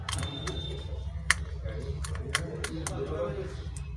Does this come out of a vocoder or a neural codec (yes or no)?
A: no